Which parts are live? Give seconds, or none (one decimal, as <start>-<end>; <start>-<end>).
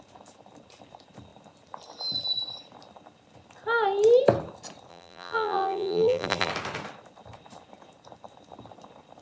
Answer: 0.0-4.9; 6.5-9.2